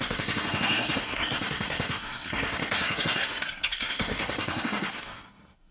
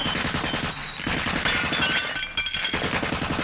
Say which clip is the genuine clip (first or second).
second